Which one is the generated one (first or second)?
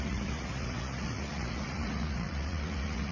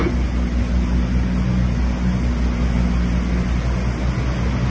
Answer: first